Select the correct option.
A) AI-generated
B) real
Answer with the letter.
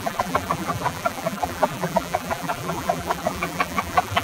A